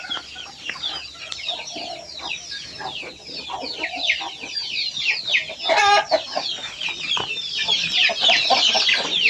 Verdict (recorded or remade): recorded